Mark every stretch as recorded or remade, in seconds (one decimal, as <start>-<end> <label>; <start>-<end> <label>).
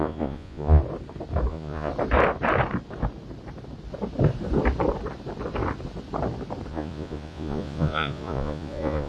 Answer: 0.0-0.8 remade; 0.8-1.5 recorded; 1.5-1.9 remade; 1.9-6.7 recorded; 6.7-9.1 remade